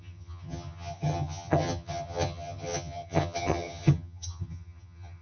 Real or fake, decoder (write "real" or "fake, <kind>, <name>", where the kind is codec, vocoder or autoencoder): fake, vocoder, HiFi-GAN